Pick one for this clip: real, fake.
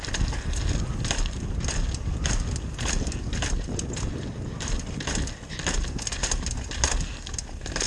real